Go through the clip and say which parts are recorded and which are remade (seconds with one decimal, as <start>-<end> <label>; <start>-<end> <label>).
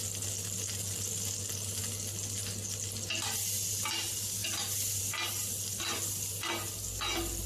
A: 0.0-7.5 recorded